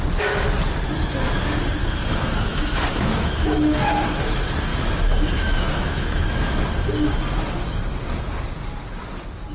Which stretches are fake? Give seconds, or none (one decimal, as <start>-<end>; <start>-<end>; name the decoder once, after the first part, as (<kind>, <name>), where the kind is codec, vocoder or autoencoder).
1.8-3.6 (autoencoder, DAC-VAE); 4.7-6.6